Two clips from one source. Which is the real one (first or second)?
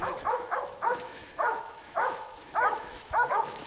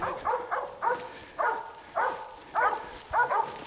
second